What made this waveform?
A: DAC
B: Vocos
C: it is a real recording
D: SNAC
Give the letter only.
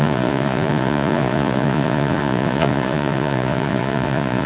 B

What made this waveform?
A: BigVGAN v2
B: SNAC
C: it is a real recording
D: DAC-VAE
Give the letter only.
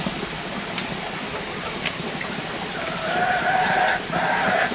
A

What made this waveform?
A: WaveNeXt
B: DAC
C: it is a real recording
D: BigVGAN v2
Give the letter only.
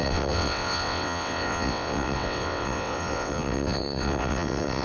A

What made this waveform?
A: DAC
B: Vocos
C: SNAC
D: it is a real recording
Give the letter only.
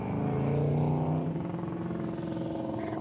D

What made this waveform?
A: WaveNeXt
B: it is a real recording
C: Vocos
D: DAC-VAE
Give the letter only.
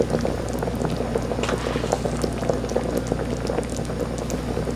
B